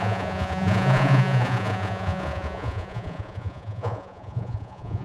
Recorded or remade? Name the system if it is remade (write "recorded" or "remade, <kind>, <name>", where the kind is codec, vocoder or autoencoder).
remade, vocoder, Vocos